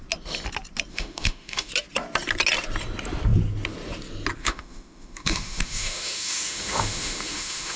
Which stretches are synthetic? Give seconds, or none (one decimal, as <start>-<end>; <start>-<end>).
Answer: 0.9-1.7; 4.4-7.8